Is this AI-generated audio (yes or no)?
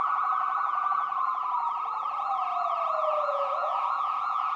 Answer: yes